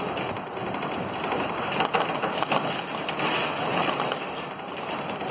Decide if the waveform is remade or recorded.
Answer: recorded